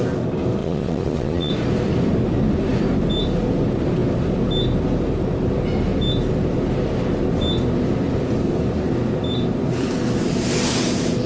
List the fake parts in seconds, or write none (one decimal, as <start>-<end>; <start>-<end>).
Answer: 0.6-1.5